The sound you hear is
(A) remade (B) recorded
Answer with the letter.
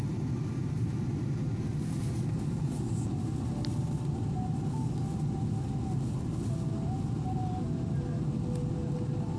B